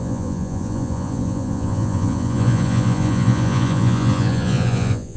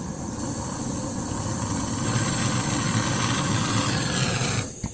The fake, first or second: first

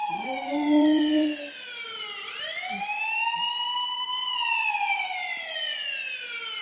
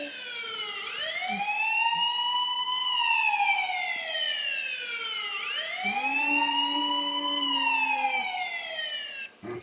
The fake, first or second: first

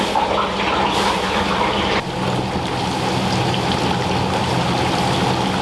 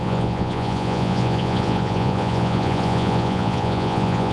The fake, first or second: second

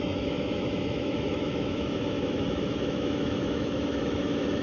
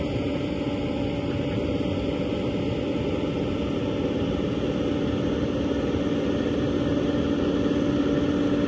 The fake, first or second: first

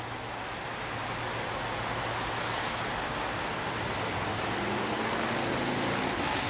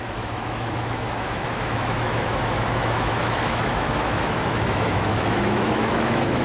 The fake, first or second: second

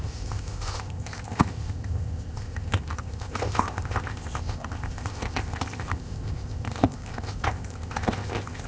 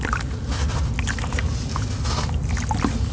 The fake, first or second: first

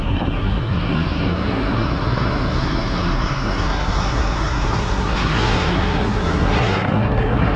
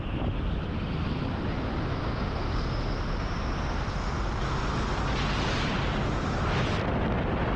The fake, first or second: first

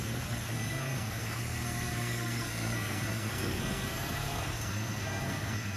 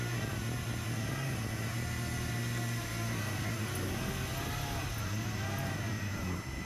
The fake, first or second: first